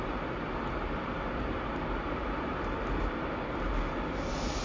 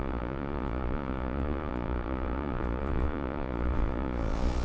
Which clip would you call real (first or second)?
first